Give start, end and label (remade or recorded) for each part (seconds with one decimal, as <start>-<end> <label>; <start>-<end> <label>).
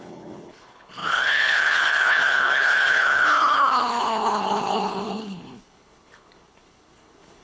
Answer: 0.0-7.4 remade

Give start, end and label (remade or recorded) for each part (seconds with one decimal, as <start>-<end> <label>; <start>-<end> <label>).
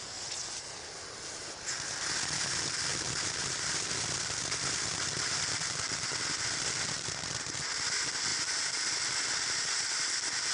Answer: 0.0-10.5 recorded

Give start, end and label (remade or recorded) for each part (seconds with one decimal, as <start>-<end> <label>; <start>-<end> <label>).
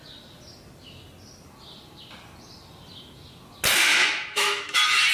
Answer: 0.0-3.9 recorded; 3.9-5.1 remade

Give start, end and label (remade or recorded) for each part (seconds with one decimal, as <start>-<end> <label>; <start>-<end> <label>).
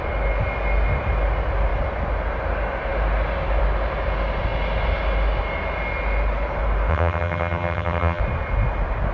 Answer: 0.0-6.9 recorded; 6.9-8.2 remade; 8.2-9.1 recorded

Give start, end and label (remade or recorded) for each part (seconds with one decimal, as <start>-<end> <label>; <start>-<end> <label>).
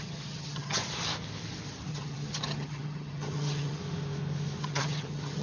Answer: 0.0-0.8 remade; 0.8-1.9 recorded; 1.9-3.8 remade; 3.8-4.6 recorded; 4.6-5.4 remade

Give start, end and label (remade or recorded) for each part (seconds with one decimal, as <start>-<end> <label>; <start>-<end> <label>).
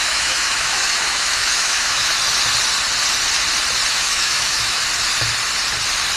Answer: 0.0-2.1 remade; 2.1-3.9 recorded; 3.9-4.8 remade; 4.8-6.2 recorded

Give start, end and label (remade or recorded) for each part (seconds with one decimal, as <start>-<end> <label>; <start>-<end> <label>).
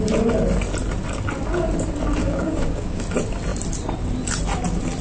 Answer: 0.0-2.2 recorded; 2.2-3.0 remade; 3.0-5.0 recorded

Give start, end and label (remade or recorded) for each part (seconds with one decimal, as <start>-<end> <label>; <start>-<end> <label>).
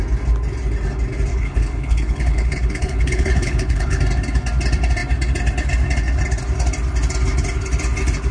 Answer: 0.0-1.3 recorded; 1.3-4.0 remade; 4.0-8.3 recorded